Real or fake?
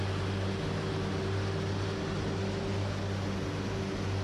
real